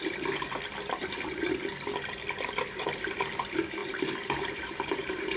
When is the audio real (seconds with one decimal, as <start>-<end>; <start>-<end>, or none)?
0.0-3.8